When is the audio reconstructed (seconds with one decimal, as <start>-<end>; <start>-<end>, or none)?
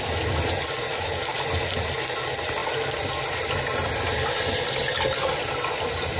none